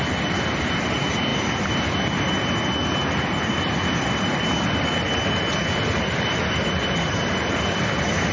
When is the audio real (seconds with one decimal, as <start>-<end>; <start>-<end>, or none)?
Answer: 0.0-8.3

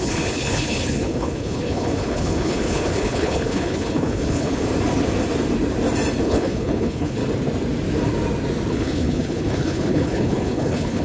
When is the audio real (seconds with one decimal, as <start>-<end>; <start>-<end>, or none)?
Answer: 4.5-6.2; 7.2-8.7

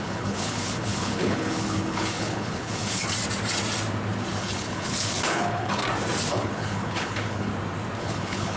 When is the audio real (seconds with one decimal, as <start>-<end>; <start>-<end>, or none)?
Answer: 3.0-4.4; 5.8-6.3; 7.5-8.0

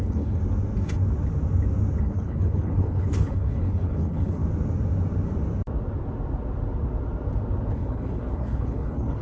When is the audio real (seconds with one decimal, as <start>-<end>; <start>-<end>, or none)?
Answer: 0.4-2.0; 4.4-7.7